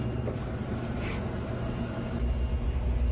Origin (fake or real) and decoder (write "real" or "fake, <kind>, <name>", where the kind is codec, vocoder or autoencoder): real